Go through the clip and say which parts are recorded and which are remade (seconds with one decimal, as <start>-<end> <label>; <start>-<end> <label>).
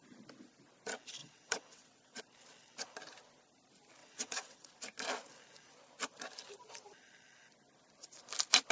0.0-1.2 recorded; 1.2-2.2 remade; 2.2-4.0 recorded; 4.0-4.7 remade; 4.7-8.7 recorded